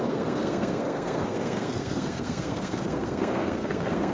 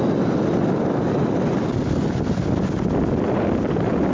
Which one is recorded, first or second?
second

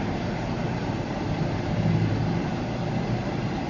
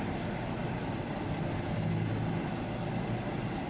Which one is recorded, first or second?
second